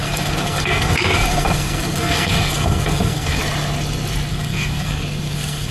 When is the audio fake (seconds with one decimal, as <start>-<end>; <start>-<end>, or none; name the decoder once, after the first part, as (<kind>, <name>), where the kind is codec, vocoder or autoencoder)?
0.0-3.4 (codec, SNAC); 4.3-5.7